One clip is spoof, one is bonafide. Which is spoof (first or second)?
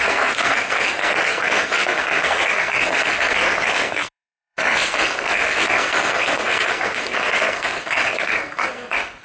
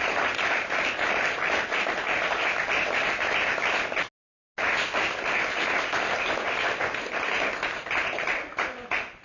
first